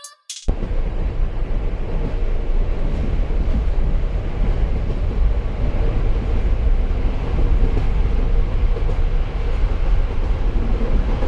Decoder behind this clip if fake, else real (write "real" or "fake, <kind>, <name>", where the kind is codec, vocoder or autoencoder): real